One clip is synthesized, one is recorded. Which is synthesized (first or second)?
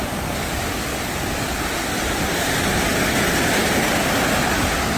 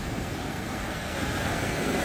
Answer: second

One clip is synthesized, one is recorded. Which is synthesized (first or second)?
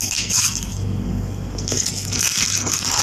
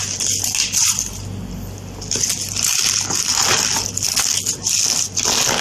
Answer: first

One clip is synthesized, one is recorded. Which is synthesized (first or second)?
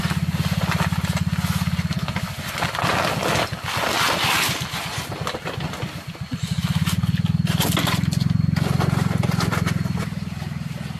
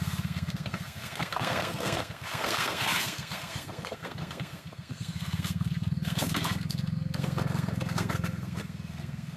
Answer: second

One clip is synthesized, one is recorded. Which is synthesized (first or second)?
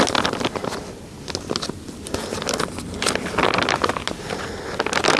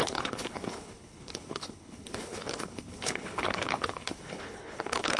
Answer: second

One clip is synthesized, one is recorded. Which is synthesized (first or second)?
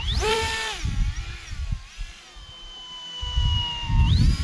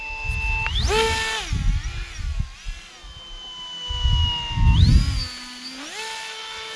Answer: first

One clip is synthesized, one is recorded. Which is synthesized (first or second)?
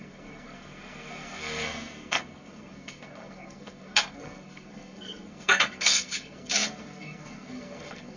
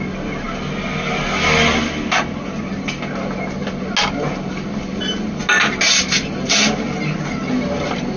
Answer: first